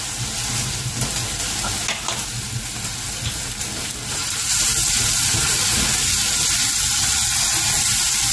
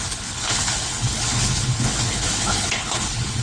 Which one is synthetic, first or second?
second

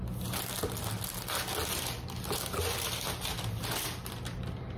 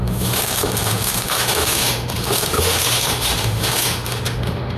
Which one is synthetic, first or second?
second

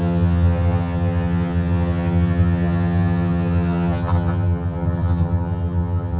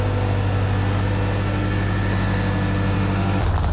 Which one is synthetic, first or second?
first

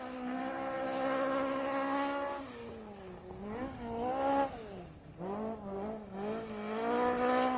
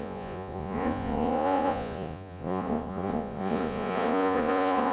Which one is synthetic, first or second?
second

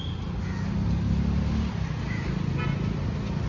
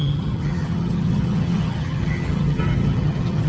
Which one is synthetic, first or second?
second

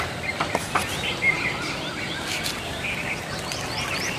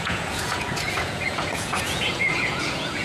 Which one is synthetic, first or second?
second